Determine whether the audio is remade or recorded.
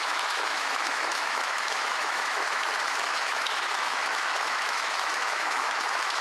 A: remade